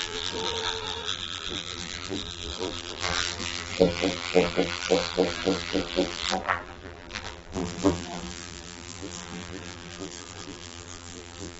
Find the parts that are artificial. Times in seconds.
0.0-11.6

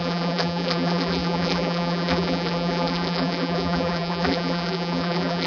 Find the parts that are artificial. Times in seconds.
0.0-5.5